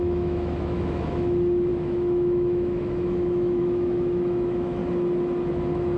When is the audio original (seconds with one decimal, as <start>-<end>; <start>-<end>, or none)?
4.8-5.5